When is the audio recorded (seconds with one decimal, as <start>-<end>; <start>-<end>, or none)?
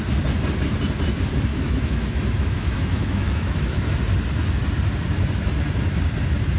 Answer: 0.0-1.5; 4.0-6.6